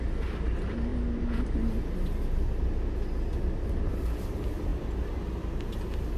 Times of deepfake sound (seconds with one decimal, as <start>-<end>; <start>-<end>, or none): none